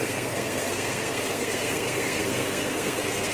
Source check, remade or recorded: remade